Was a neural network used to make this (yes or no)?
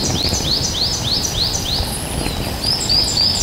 no